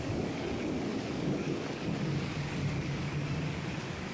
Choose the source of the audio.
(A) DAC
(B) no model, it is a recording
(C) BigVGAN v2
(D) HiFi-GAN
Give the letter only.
A